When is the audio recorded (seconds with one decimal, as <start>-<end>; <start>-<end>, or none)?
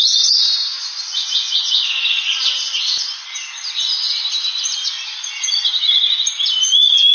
0.0-7.1